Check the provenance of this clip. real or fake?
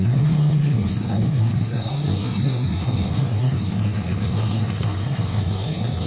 fake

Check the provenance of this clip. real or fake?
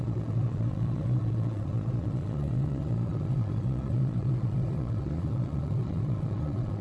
fake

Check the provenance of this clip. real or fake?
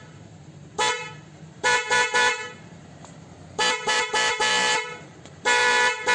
fake